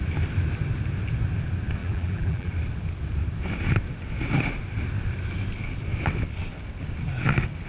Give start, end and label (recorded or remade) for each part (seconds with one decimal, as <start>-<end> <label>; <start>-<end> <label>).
0.0-1.8 recorded; 1.8-2.5 remade; 2.5-7.7 recorded

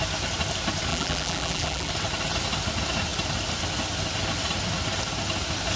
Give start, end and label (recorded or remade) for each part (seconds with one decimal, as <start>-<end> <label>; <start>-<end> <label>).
0.0-0.9 recorded; 0.9-1.9 remade; 1.9-5.8 recorded

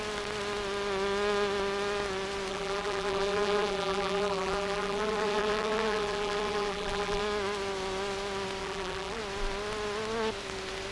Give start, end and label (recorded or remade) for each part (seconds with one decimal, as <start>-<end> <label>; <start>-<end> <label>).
0.0-2.5 recorded; 2.5-7.2 remade; 7.2-8.6 recorded; 8.6-9.2 remade; 9.2-10.9 recorded

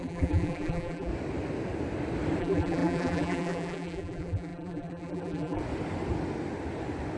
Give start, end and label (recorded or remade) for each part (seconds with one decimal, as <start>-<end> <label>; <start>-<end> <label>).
0.0-1.1 remade; 1.1-2.4 recorded; 2.4-5.6 remade; 5.6-7.2 recorded